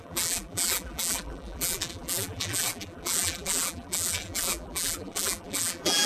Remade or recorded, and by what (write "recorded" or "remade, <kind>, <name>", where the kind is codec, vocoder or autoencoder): remade, vocoder, BigVGAN v2